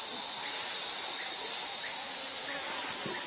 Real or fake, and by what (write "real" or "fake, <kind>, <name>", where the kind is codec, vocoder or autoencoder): real